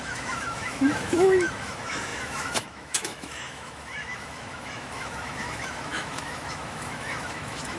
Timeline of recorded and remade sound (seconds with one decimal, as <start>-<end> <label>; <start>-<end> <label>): 0.0-7.8 remade